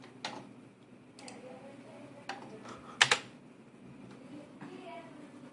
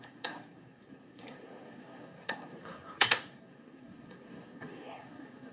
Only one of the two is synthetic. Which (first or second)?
second